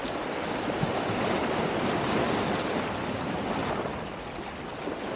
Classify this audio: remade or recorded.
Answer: recorded